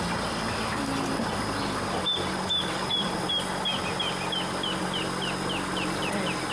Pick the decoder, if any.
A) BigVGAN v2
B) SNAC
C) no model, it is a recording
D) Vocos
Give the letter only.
C